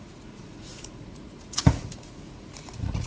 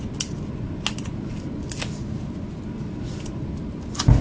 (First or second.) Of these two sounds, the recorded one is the second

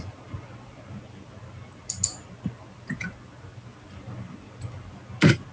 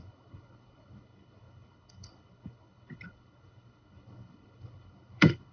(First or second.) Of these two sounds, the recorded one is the first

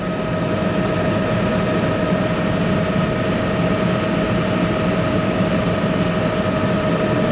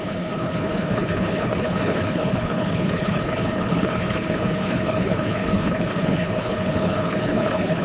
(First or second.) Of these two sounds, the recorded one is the first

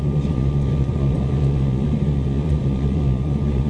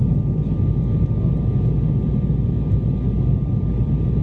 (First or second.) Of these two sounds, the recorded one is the second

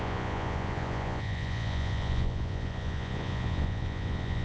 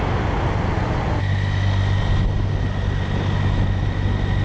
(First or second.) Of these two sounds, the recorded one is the second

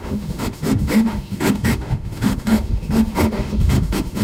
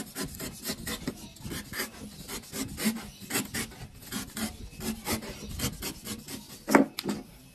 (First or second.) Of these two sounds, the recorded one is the second